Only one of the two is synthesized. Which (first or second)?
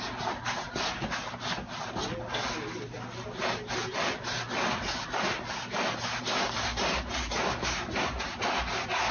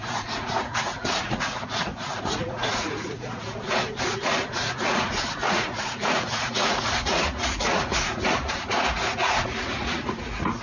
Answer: second